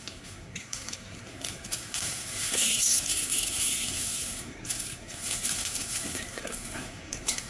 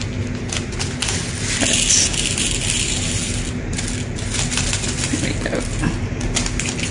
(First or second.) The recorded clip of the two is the second